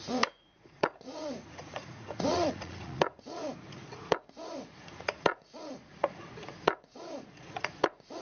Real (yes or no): no